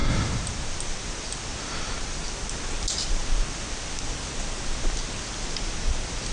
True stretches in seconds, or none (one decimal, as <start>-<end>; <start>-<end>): 0.0-6.3